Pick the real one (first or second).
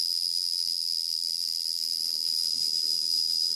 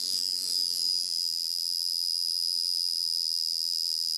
second